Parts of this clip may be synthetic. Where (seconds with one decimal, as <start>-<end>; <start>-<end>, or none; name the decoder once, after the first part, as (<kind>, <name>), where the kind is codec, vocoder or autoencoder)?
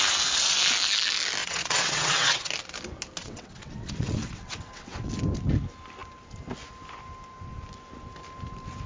1.4-2.5 (vocoder, WaveNeXt); 3.2-5.1